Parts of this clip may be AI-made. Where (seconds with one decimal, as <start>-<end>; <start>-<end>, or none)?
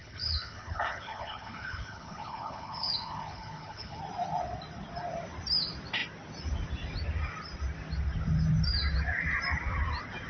0.0-4.0